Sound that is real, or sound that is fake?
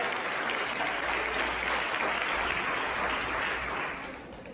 real